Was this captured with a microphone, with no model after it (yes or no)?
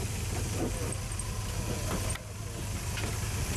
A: yes